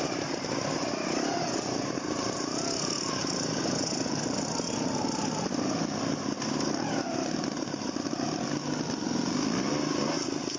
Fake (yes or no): no